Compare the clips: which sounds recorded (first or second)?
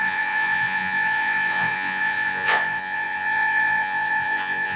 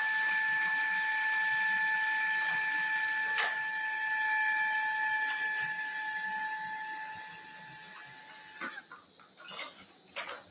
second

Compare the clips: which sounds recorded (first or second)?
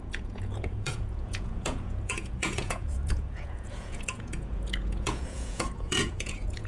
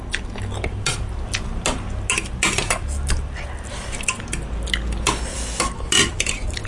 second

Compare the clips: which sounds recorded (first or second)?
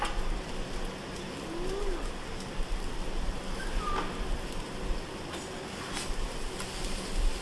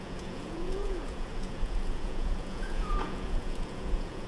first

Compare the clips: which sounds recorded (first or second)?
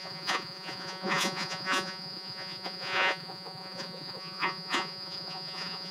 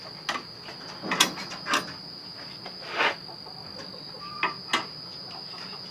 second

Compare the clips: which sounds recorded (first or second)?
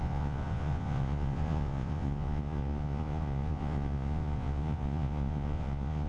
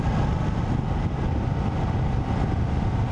second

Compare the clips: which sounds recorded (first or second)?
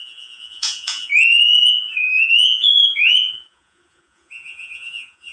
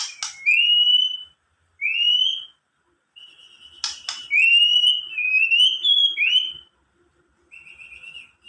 second